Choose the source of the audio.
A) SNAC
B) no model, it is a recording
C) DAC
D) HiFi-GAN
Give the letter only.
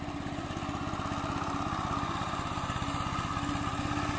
B